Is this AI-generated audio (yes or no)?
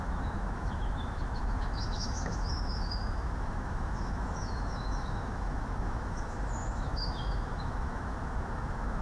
yes